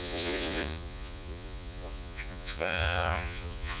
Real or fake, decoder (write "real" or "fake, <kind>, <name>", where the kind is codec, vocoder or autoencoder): fake, vocoder, Vocos